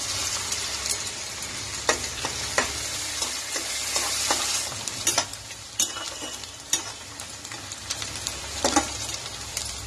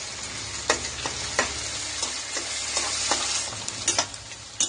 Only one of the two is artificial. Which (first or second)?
first